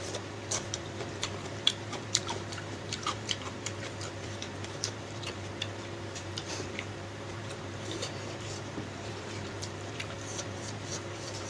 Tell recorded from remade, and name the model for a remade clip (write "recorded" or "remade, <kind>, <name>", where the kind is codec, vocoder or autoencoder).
remade, vocoder, BigVGAN v2